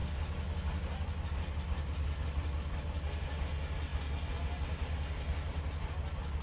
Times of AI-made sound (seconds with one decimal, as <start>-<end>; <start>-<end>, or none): none